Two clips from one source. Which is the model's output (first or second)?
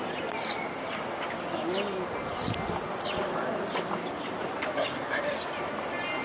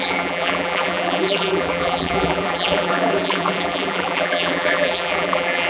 second